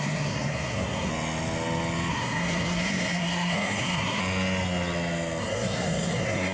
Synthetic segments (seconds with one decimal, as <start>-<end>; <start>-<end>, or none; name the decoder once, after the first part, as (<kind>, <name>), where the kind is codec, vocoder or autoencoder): 0.0-1.1 (codec, SNAC); 2.1-4.2; 5.4-6.5